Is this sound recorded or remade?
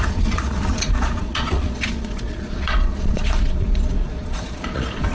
remade